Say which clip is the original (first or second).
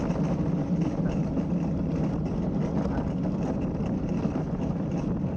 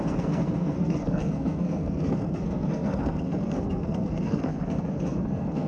first